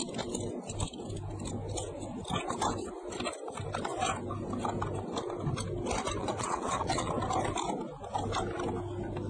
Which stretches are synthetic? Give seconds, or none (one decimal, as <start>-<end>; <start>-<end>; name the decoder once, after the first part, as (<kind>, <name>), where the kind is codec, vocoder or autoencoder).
6.2-7.1 (vocoder, WaveNeXt)